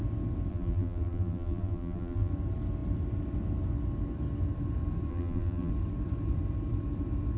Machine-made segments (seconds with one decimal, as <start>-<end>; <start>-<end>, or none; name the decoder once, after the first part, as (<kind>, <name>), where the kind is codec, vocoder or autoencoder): 0.5-2.3 (vocoder, BigVGAN v2); 5.1-5.7

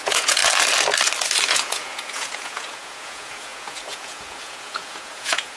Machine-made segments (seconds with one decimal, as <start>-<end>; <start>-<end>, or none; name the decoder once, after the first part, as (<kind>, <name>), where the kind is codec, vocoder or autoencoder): 0.0-0.4 (vocoder, Vocos); 1.5-5.6